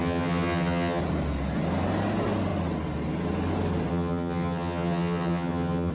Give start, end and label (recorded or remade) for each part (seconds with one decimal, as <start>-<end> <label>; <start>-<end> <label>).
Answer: 0.0-1.0 remade; 1.0-3.9 recorded; 3.9-5.9 remade